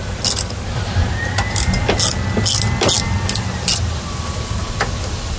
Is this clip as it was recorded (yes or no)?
yes